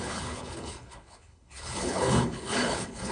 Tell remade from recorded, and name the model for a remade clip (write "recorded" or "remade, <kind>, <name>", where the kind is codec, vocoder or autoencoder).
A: remade, codec, HILCodec